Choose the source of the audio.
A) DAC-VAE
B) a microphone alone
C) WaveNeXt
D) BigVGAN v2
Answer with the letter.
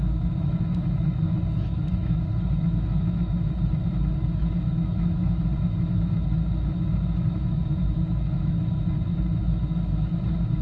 A